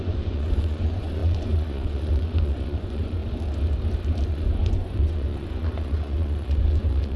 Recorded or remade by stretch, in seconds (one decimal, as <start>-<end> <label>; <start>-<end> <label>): 0.0-3.2 remade; 3.2-4.3 recorded; 4.3-7.2 remade